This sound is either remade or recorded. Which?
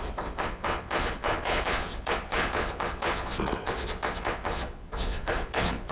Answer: remade